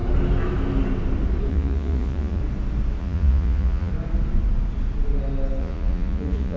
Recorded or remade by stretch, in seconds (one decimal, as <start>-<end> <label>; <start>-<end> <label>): 0.0-1.5 recorded; 1.5-2.4 remade; 2.4-3.0 recorded; 3.0-3.9 remade; 3.9-5.6 recorded; 5.6-6.6 remade